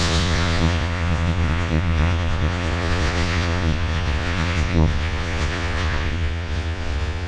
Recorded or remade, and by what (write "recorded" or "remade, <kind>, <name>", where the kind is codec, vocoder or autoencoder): remade, vocoder, Vocos